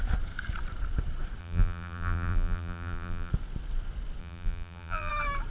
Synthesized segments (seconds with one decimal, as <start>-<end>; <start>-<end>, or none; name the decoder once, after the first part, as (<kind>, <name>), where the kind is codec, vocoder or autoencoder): 1.4-3.3 (vocoder, BigVGAN v2); 4.2-5.1